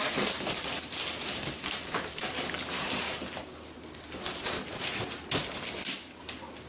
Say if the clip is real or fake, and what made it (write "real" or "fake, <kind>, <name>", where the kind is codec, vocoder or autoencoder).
real